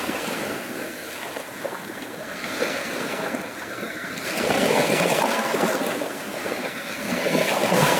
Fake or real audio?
fake